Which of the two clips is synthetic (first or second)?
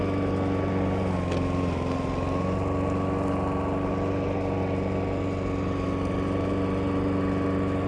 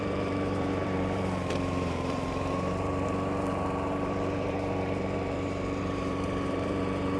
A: second